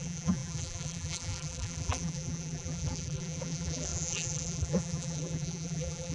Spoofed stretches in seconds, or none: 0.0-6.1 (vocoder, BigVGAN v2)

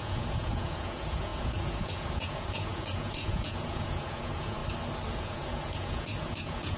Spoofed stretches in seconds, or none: 0.0-4.6 (vocoder, Vocos); 5.2-6.8

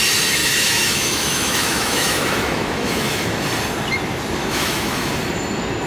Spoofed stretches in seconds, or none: 0.4-3.4 (autoencoder, DAC-VAE); 4.4-5.1

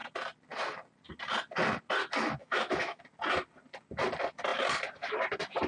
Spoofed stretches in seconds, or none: 2.4-3.0 (autoencoder, DAC-VAE)